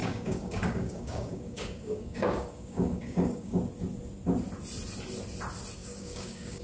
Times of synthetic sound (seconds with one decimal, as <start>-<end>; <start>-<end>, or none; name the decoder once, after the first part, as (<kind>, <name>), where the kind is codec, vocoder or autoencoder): 0.0-3.6 (codec, DAC); 5.8-6.6